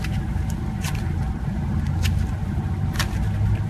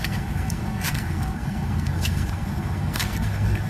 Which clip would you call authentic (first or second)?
first